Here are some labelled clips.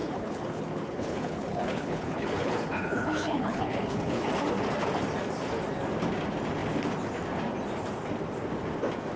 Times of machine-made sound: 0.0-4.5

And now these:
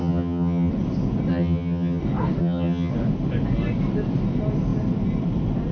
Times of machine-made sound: 0.0-0.7; 1.3-2.0; 2.4-2.9

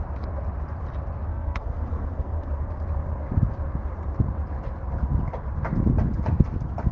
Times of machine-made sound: 1.3-2.6

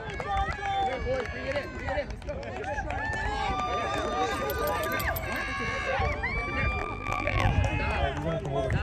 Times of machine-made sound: 6.8-7.5

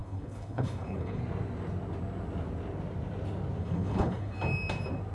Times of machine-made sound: 0.0-1.2; 3.6-4.3